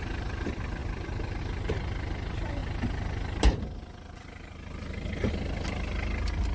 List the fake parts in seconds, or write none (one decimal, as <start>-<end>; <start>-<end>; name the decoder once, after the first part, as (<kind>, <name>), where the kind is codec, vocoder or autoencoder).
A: none